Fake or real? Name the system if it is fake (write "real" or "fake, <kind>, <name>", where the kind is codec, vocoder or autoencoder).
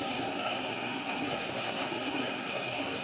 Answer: fake, codec, SNAC